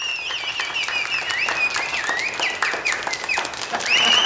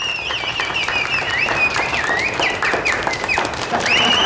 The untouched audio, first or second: first